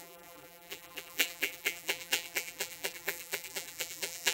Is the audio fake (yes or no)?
yes